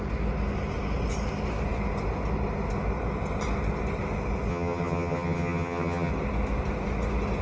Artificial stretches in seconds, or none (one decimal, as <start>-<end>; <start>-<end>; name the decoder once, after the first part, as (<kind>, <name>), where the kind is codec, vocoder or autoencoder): 4.5-6.1 (vocoder, HiFi-GAN)